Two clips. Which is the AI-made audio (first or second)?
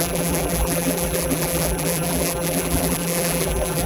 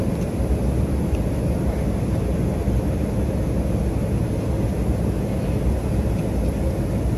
first